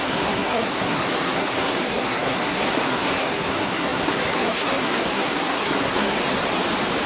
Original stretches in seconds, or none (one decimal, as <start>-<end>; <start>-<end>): 6.2-7.1